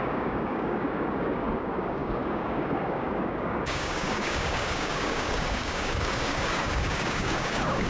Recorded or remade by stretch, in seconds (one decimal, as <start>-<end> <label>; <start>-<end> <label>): 0.0-7.9 remade